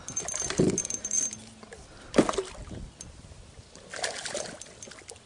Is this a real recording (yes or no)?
yes